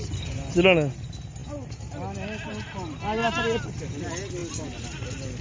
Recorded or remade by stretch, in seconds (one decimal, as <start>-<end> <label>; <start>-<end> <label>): 0.0-5.4 recorded